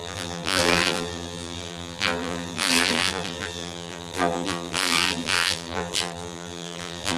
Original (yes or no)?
no